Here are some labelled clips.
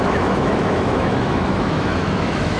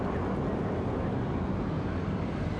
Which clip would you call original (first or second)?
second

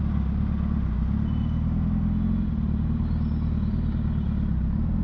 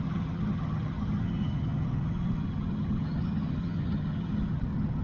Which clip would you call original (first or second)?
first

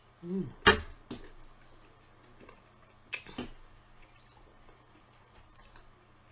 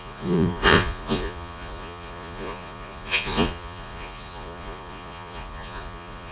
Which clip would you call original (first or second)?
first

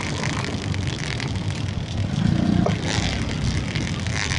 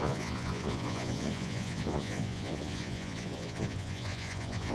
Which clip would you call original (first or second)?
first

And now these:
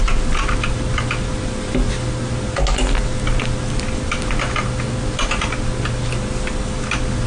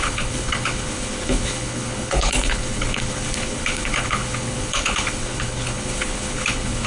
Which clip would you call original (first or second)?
first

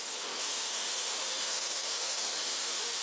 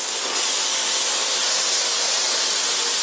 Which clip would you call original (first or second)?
second